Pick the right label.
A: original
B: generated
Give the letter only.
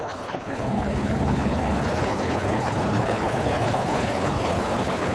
B